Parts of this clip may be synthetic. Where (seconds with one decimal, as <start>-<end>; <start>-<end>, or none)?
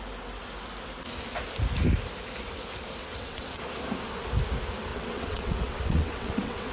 3.0-3.6; 4.9-6.7